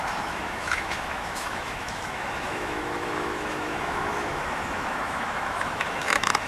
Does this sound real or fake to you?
fake